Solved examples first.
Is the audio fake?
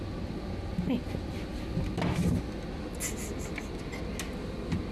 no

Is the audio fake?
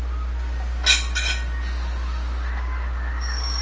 no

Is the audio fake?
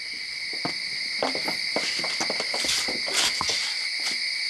no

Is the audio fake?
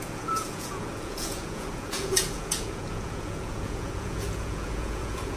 yes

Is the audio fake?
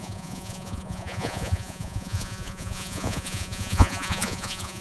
yes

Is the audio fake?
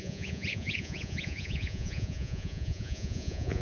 yes